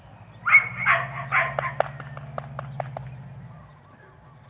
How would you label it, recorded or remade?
recorded